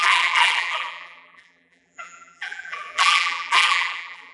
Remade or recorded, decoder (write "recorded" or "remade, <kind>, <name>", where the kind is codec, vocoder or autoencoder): remade, vocoder, BigVGAN v2